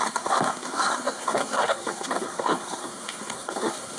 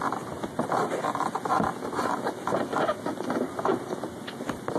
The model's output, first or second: first